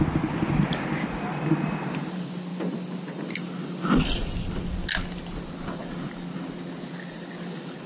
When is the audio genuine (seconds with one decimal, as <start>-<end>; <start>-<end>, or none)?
0.0-7.9